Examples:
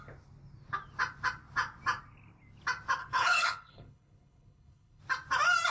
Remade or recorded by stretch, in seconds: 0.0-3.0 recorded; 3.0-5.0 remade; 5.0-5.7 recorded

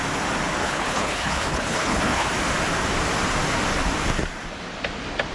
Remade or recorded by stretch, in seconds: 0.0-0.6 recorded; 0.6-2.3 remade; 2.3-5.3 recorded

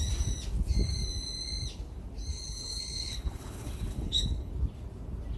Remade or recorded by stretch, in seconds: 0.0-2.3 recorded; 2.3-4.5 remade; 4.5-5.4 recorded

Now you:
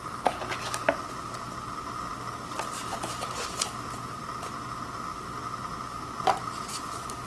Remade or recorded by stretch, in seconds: 0.0-7.3 recorded

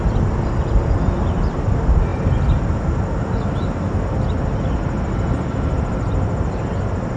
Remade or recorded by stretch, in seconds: 0.0-7.2 recorded

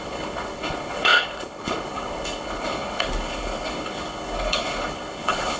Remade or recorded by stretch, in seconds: 0.0-5.6 remade